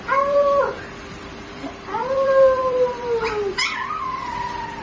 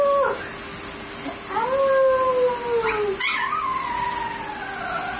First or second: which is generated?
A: first